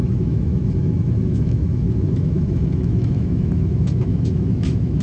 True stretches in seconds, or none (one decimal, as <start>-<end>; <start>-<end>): none